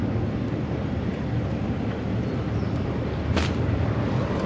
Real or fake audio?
fake